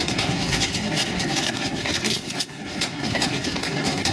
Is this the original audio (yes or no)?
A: no